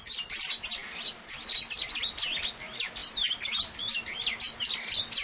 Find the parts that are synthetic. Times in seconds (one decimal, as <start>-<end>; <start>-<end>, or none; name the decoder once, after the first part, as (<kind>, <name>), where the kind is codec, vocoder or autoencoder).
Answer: none